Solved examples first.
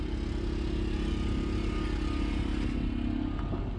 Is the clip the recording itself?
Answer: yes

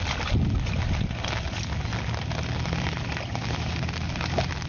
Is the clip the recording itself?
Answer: yes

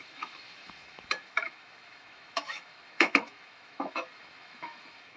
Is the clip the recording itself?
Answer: no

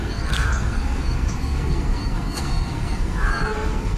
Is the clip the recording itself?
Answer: no